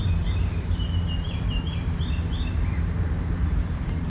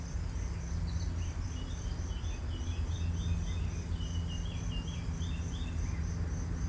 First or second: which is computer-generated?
first